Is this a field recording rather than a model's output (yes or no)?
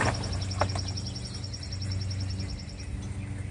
yes